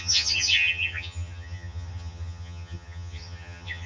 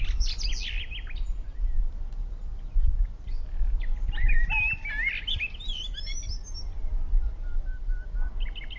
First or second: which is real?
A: second